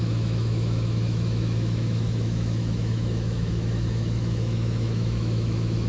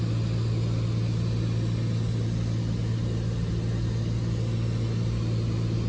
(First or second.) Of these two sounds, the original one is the second